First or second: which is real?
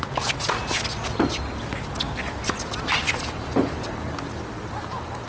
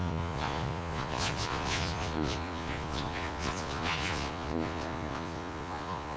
first